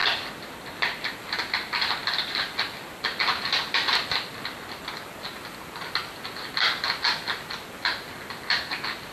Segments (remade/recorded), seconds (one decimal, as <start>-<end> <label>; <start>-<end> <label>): 0.0-1.1 remade; 1.1-9.1 recorded